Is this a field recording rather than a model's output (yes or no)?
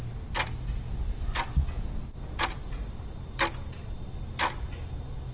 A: yes